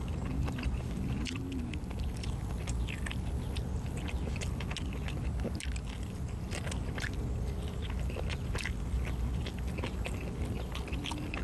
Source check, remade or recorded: recorded